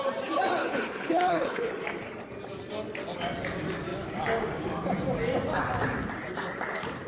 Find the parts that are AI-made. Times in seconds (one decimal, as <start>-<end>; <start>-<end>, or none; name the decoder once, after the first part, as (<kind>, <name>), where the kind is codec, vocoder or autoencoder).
0.6-1.7 (codec, HILCodec)